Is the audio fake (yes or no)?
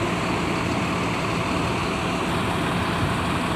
no